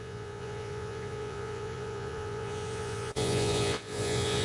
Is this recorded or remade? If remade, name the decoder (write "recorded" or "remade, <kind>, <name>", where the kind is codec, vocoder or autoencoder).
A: remade, vocoder, Vocos